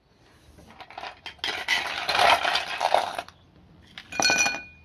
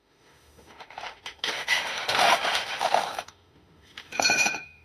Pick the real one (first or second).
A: first